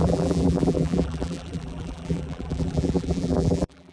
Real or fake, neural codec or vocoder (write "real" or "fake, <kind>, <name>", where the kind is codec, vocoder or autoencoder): fake, vocoder, BigVGAN v2